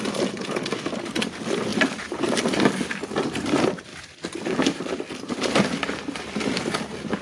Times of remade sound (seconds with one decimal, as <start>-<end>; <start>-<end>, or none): 1.7-2.4; 3.9-6.8

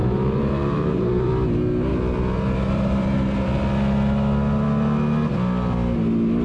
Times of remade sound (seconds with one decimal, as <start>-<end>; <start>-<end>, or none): 0.0-1.3; 1.9-3.5

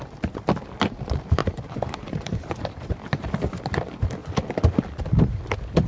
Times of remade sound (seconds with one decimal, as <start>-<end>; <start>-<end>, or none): 1.4-3.4

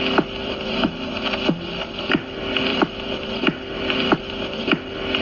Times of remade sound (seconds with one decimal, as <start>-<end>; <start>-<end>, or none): 0.4-2.0; 2.7-4.6

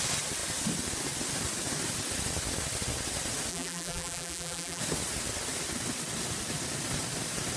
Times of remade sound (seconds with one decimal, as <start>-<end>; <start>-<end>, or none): 3.5-4.8

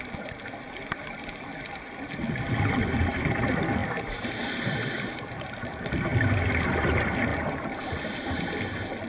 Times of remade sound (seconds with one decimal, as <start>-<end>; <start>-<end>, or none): 7.3-8.4

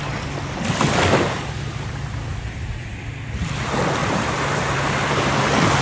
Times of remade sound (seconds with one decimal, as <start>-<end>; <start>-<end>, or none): 2.3-3.0; 4.0-5.8